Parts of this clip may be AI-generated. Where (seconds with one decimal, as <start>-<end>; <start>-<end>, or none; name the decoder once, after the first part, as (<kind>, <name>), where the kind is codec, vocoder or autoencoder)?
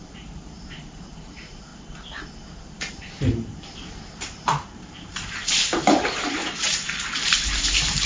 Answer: 0.0-1.7 (vocoder, BigVGAN v2); 2.9-8.1